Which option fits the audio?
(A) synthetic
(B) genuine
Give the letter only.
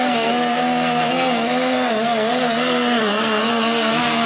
A